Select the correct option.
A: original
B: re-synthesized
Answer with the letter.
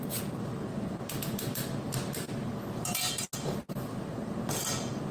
A